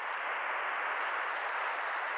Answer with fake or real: real